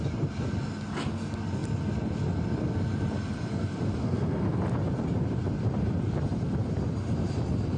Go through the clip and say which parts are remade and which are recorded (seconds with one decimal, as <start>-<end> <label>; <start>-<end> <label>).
0.0-4.0 recorded; 4.0-4.6 remade; 4.6-7.8 recorded